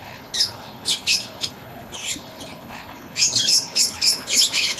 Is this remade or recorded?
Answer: remade